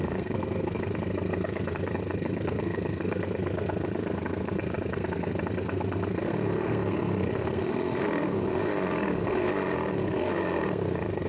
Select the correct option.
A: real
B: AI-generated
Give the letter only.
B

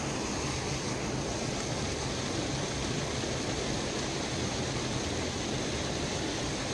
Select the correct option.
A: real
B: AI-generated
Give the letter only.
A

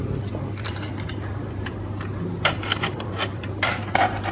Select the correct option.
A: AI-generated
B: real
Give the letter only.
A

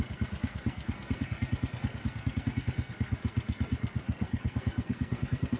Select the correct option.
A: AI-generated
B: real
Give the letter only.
A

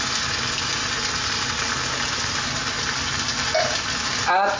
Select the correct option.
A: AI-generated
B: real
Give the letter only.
B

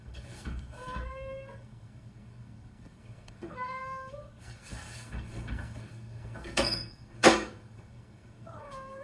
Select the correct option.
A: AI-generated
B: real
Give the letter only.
A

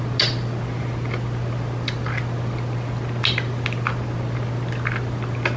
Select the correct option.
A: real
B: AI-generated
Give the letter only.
A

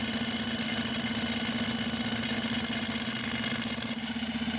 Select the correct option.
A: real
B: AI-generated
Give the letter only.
A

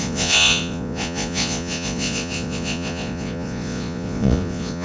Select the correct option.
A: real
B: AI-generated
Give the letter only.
B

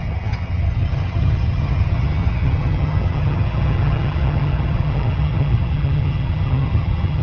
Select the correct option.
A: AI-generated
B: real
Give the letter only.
A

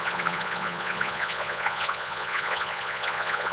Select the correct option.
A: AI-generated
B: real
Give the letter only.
A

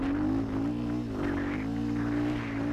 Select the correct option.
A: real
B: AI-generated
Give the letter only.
A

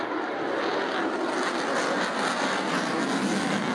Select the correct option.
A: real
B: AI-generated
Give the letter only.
A